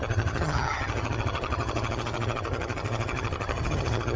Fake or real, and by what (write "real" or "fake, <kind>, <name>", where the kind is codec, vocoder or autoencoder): fake, vocoder, HiFi-GAN